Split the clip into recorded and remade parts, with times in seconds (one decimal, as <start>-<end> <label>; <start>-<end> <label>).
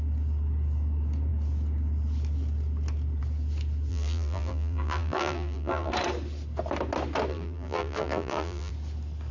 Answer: 0.0-3.9 recorded; 3.9-5.9 remade; 5.9-7.3 recorded; 7.3-8.7 remade; 8.7-9.3 recorded